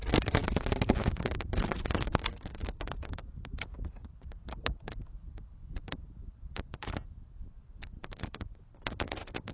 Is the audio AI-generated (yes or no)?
no